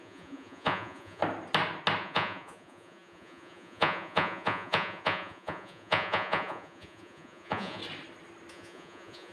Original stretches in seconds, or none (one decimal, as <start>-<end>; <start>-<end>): 1.2-2.0; 7.8-8.5